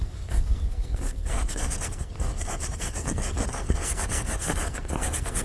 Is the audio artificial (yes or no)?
yes